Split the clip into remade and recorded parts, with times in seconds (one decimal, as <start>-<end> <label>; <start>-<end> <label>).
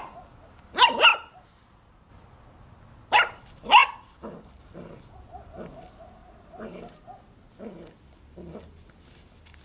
0.0-1.1 recorded; 1.1-2.1 remade; 2.1-6.2 recorded; 6.2-7.0 remade; 7.0-9.6 recorded